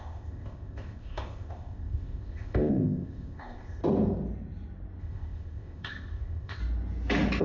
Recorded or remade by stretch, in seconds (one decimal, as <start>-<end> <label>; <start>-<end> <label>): 0.0-3.8 remade; 3.8-5.0 recorded; 5.0-6.6 remade; 6.6-7.4 recorded

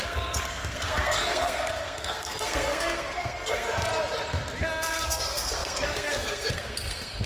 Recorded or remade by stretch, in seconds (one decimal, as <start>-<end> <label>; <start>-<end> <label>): 0.0-3.9 remade; 3.9-4.6 recorded; 4.6-7.3 remade

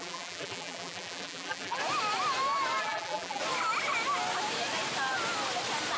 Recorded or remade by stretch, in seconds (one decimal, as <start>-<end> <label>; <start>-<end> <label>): 0.0-1.8 remade; 1.8-2.8 recorded; 2.8-3.4 remade; 3.4-6.0 recorded

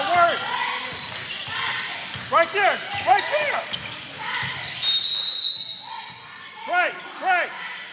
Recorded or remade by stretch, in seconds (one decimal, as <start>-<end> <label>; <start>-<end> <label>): 0.0-7.9 recorded

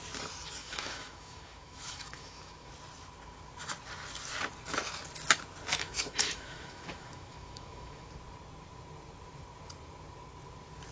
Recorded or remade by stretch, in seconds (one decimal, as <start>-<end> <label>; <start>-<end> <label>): 0.0-0.6 recorded; 0.6-2.7 remade; 2.7-5.7 recorded; 5.7-8.1 remade; 8.1-10.9 recorded

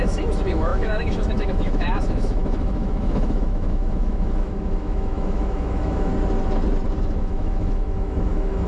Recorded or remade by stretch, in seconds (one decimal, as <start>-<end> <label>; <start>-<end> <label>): 0.0-6.1 remade; 6.1-7.0 recorded; 7.0-8.7 remade